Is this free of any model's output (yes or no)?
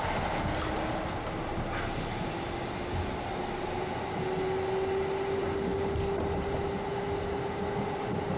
yes